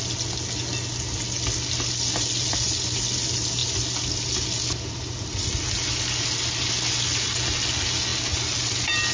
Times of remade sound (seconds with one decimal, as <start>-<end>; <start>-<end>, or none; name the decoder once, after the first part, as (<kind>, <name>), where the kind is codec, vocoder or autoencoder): none